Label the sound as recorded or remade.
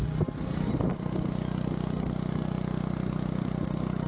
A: recorded